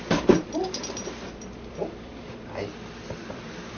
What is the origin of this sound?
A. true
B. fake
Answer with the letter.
B